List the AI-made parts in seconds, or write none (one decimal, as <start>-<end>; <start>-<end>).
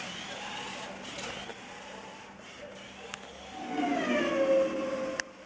none